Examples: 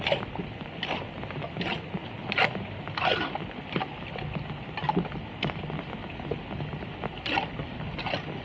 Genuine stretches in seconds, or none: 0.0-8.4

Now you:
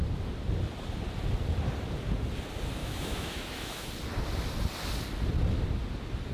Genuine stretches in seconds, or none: 0.0-2.8; 3.9-6.3

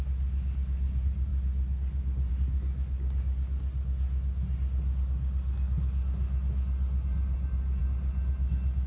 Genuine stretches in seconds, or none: 0.0-8.9

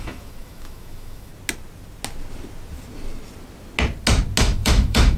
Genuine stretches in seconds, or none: 1.3-4.4

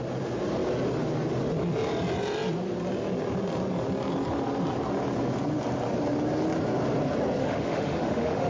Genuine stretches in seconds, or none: 0.0-7.4

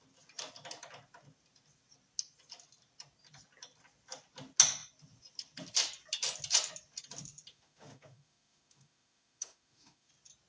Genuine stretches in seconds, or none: 0.0-7.5; 10.1-10.5

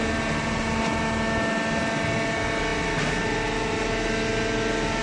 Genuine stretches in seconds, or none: 0.0-5.0

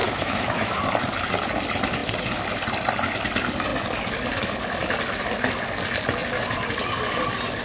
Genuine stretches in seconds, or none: 0.8-7.6